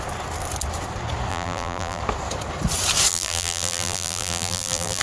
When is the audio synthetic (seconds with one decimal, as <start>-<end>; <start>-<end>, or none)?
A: 1.3-2.0; 3.1-5.0